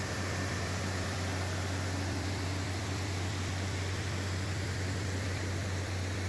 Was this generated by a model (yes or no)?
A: yes